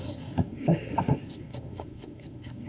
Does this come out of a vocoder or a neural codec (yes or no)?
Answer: yes